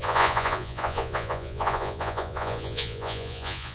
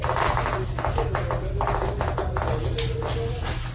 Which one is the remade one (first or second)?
first